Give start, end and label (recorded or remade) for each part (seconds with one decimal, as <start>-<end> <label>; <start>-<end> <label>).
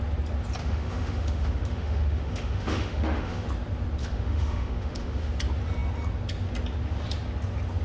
0.0-0.6 recorded; 0.6-3.5 remade; 3.5-4.0 recorded; 4.0-5.3 remade; 5.3-7.8 recorded